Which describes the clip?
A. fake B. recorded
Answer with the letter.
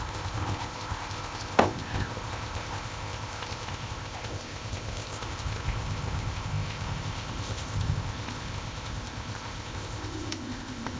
A